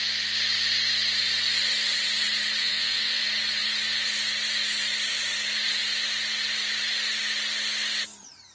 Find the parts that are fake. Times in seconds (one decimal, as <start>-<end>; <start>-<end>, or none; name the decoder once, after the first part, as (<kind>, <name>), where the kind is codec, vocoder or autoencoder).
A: 2.6-3.2 (vocoder, WaveNeXt)